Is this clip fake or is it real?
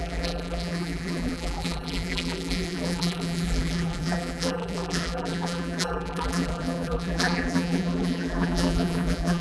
fake